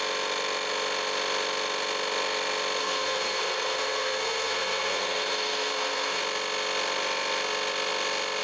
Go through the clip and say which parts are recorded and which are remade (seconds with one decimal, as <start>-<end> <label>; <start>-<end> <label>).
0.0-2.8 recorded; 2.8-6.2 remade; 6.2-8.4 recorded